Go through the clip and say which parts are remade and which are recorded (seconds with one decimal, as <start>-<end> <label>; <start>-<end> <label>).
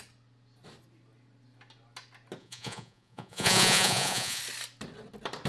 0.0-2.4 recorded; 2.4-4.4 remade; 4.4-5.5 recorded